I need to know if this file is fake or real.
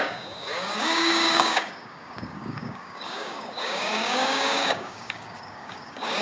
fake